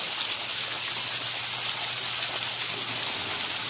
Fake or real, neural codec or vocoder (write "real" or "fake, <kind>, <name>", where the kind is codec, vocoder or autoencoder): real